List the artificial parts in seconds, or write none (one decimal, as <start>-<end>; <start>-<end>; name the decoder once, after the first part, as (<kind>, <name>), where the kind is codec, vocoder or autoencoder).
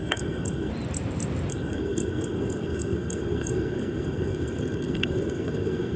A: 0.0-0.7 (codec, SNAC); 1.5-6.0